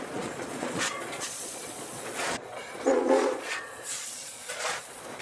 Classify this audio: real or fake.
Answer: fake